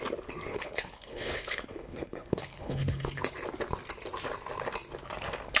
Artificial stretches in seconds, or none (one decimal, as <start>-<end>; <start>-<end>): 0.5-3.2